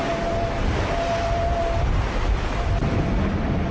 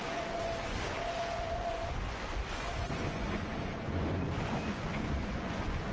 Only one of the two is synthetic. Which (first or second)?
second